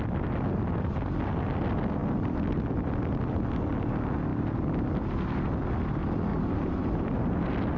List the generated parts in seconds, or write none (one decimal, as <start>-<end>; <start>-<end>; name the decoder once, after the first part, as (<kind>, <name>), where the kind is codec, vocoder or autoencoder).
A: 4.3-4.8 (vocoder, BigVGAN v2); 6.3-7.3